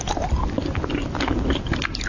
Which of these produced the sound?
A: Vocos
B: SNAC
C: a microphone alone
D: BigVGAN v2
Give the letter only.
C